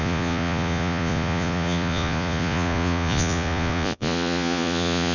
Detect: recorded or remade remade